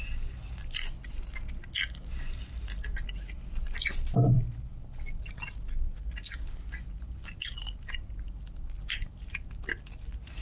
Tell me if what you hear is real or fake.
real